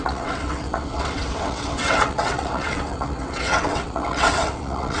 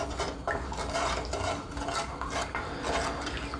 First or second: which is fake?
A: first